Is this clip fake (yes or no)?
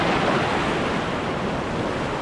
no